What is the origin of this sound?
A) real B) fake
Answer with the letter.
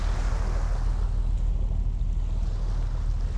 A